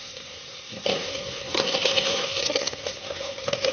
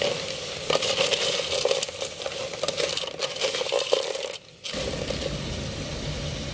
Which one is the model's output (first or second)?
first